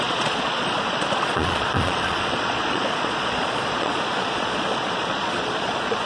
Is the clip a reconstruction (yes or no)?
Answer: yes